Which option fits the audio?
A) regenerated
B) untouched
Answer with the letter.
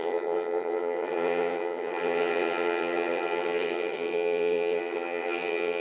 A